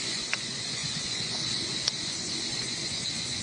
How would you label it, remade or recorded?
remade